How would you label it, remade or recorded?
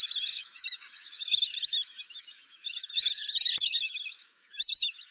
remade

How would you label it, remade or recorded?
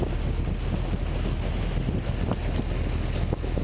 recorded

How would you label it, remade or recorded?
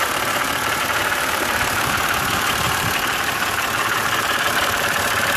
remade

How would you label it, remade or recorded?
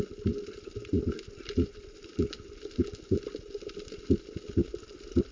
recorded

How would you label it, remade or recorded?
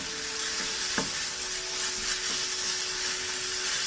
recorded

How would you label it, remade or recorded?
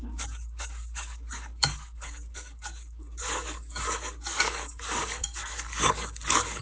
remade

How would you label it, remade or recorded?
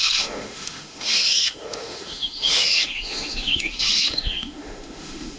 remade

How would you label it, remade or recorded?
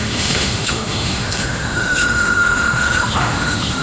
remade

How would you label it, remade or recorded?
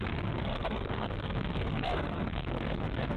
remade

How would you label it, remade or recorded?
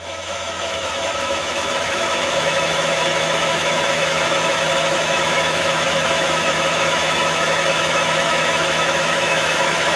remade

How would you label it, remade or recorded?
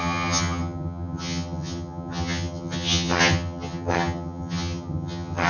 remade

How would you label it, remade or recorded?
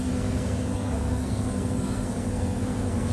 remade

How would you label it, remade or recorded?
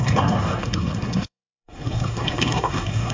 remade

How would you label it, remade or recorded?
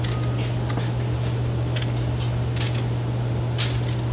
recorded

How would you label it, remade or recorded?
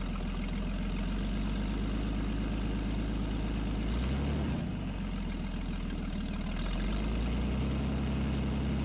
recorded